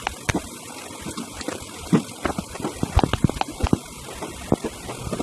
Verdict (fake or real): real